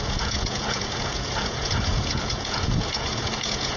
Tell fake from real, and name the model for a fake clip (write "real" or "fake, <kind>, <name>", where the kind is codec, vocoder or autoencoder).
fake, vocoder, Vocos